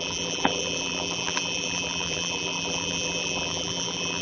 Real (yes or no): no